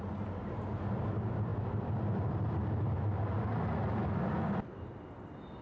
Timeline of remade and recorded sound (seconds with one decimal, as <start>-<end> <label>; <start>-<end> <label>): 0.0-5.6 recorded